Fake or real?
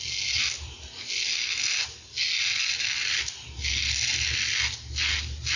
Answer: real